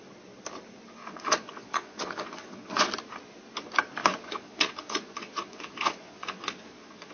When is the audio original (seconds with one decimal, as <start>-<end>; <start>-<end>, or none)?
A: 0.0-1.0; 2.9-4.0